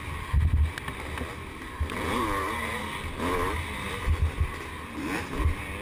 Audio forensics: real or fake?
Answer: real